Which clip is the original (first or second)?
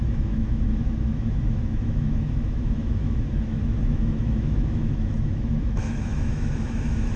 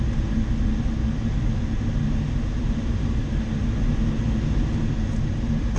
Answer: second